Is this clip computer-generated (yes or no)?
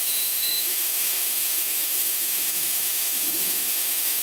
yes